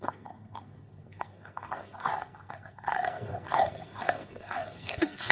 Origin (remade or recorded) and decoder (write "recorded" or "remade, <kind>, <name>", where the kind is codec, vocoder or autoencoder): remade, codec, SNAC